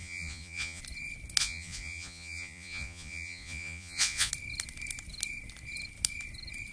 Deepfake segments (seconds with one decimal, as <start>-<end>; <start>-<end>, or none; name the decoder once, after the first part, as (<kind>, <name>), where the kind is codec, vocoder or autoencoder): 0.0-0.8 (vocoder, Vocos); 1.4-4.3